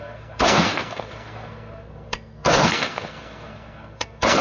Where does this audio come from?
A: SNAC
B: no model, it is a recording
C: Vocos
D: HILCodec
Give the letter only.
A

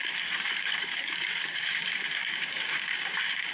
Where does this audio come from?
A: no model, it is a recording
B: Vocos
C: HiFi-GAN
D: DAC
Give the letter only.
D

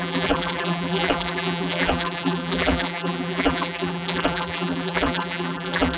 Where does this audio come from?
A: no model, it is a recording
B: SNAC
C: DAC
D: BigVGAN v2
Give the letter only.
D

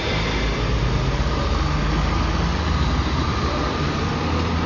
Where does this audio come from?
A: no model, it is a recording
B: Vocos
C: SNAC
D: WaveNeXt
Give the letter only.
A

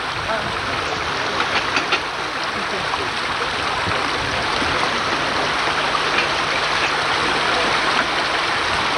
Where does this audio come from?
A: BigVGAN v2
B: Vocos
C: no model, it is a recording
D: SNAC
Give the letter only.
C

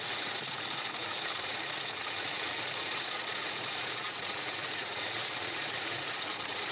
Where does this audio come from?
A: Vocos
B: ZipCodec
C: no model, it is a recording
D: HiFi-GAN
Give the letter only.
A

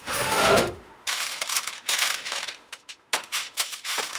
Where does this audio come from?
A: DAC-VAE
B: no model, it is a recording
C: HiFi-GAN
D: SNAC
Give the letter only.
A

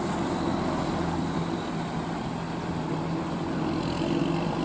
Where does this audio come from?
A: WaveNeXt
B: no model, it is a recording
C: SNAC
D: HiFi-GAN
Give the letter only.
B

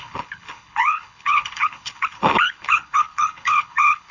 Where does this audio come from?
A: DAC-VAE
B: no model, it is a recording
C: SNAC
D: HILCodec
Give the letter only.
D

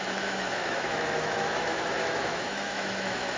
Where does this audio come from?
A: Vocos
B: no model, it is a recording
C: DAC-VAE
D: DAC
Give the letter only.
C